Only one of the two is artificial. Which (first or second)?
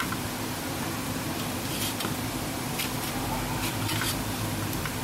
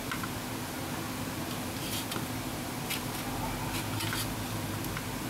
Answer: first